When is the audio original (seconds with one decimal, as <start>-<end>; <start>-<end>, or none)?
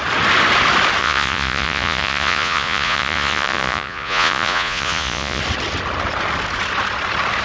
0.0-1.0; 5.4-7.4